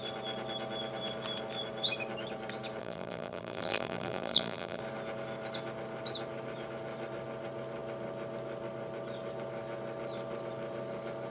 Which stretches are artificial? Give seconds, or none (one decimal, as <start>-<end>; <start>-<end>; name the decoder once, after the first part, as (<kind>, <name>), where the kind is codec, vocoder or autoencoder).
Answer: 2.8-4.8 (vocoder, BigVGAN v2)